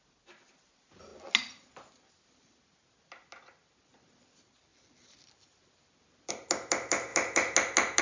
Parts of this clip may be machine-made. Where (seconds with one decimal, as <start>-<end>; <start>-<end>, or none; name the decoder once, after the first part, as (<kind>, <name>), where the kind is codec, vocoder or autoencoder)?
4.7-6.3 (vocoder, BigVGAN v2)